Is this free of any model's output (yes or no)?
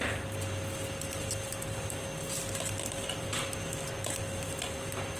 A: yes